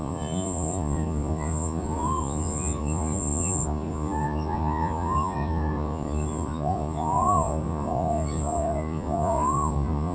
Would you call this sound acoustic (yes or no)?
no